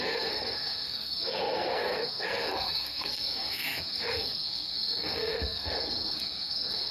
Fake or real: fake